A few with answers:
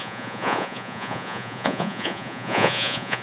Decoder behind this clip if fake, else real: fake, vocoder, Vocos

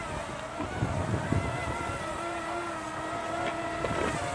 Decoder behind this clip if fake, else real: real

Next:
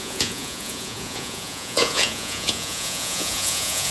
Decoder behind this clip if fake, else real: fake, vocoder, Vocos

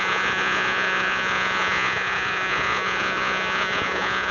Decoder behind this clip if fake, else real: fake, vocoder, Vocos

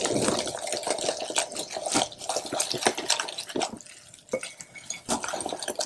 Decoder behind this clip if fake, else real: real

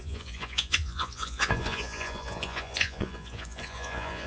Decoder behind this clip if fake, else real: fake, vocoder, Vocos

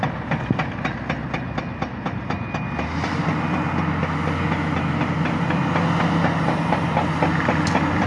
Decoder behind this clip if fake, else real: real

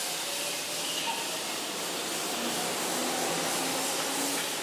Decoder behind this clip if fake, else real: real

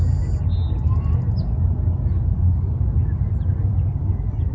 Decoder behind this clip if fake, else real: real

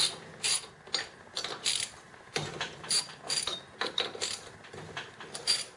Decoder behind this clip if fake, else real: real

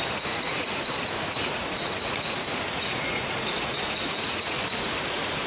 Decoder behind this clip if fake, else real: fake, vocoder, Vocos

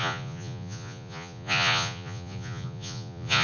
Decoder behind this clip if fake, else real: fake, vocoder, Vocos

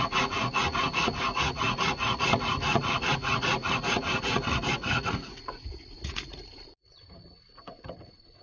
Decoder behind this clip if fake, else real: fake, vocoder, Vocos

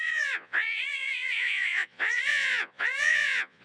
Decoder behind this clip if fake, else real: fake, vocoder, Vocos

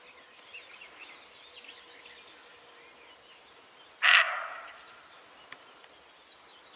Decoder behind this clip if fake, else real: real